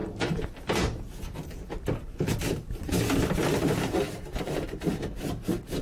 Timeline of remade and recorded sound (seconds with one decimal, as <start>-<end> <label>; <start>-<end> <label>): 0.0-2.9 remade; 2.9-5.8 recorded